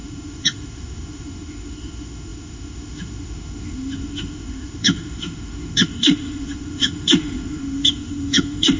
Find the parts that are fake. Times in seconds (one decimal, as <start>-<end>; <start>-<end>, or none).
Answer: 0.0-8.8